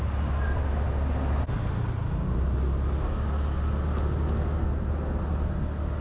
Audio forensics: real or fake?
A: real